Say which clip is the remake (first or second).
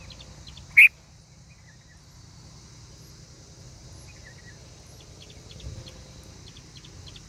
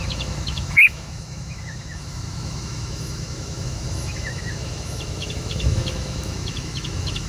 second